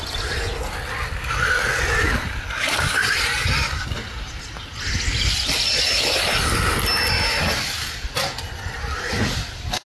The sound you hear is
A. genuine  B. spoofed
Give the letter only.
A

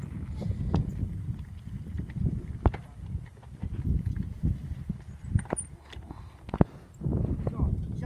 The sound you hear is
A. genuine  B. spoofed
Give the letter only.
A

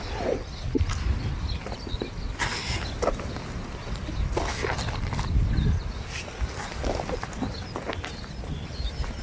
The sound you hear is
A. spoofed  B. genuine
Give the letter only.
B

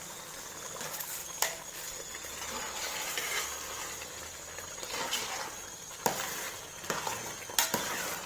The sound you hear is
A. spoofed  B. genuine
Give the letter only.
B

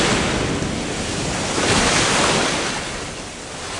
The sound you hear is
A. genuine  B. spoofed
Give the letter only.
A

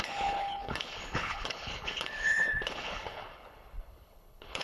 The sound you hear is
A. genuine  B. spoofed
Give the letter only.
B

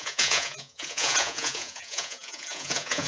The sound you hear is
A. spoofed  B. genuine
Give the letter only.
A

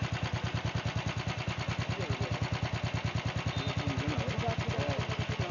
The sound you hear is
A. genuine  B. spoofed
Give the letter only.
A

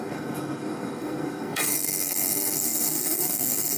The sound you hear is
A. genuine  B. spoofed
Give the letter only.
B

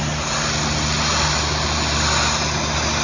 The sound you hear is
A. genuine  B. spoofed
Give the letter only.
A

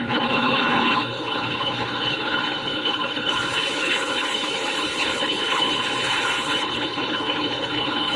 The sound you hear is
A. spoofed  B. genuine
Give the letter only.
A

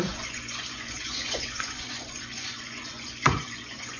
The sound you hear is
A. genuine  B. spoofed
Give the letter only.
B